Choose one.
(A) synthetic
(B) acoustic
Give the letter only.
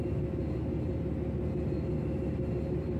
B